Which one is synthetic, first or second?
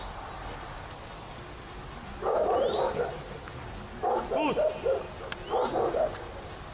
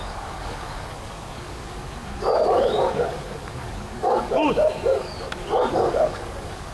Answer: second